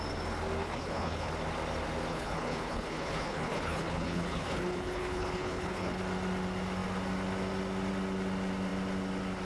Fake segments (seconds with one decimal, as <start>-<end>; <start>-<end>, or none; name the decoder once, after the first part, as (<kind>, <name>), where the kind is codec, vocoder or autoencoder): 0.6-1.3 (codec, HILCodec); 2.1-6.0

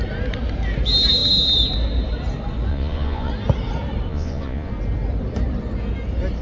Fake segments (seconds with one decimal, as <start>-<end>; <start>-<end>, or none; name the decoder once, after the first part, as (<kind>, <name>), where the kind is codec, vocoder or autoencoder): 2.7-3.3 (vocoder, Vocos); 4.1-4.7

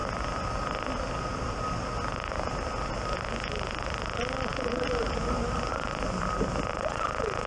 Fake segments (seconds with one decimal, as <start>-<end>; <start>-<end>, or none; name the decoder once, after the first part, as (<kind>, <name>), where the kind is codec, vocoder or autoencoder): none

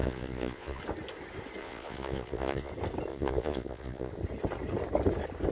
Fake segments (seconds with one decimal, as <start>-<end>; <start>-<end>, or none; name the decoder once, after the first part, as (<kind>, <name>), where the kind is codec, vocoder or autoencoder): 0.0-0.8 (vocoder, Vocos); 1.6-2.7; 3.1-4.1